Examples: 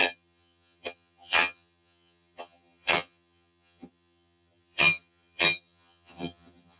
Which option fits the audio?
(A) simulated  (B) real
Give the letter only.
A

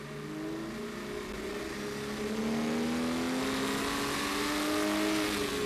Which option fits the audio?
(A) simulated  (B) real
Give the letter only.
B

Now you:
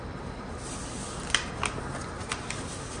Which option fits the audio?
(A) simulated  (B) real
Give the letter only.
B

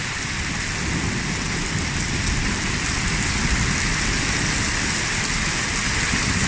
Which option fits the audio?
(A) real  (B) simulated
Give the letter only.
A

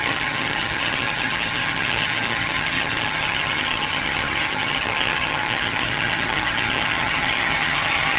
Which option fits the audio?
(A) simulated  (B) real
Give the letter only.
A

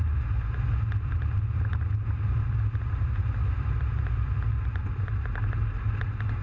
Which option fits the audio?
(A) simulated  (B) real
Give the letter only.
B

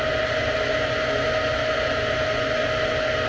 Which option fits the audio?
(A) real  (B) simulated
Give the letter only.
A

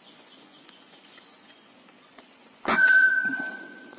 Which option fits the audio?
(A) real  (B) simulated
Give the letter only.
B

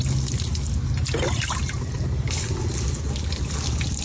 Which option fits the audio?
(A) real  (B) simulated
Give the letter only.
A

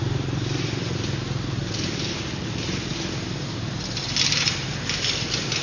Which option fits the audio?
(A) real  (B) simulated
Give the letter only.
A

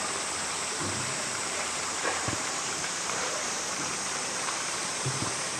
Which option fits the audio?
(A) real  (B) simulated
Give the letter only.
B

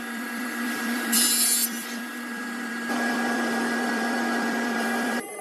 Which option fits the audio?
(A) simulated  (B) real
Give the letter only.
A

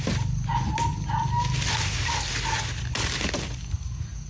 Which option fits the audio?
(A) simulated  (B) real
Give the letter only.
B